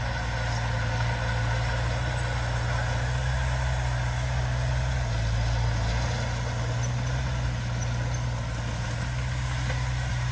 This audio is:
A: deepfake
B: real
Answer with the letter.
B